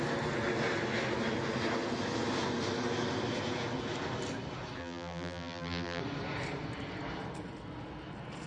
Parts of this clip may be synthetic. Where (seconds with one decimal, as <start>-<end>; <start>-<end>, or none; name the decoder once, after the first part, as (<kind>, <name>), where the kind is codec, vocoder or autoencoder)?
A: 4.8-6.0 (vocoder, BigVGAN v2)